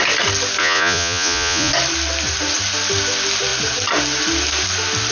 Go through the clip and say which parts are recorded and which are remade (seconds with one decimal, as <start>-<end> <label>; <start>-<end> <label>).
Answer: 0.0-0.6 recorded; 0.6-1.7 remade; 1.7-5.1 recorded